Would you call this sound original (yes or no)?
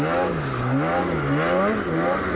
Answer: yes